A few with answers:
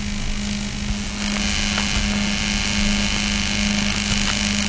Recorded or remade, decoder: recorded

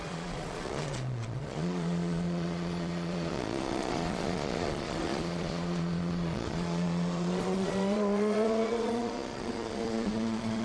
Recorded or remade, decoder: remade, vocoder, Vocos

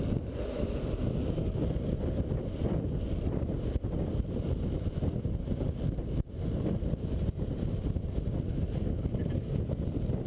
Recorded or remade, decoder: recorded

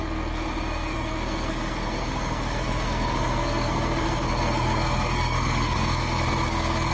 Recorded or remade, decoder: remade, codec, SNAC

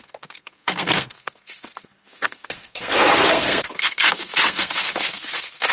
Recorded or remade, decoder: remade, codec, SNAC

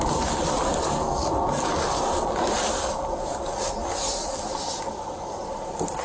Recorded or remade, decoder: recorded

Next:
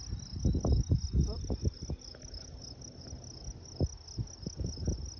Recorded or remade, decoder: recorded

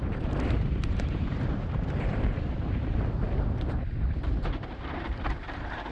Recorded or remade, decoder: remade, vocoder, BigVGAN v2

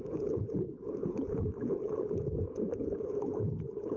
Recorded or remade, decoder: remade, codec, HILCodec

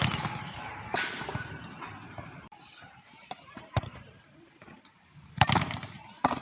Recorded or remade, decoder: remade, vocoder, BigVGAN v2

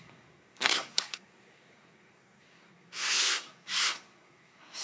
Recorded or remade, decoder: remade, codec, SNAC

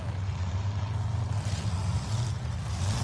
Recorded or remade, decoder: recorded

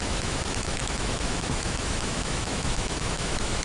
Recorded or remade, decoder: remade, autoencoder, DAC-VAE